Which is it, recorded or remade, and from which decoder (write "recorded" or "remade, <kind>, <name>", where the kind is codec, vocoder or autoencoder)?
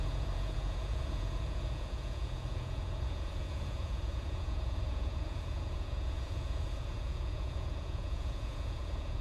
remade, vocoder, Vocos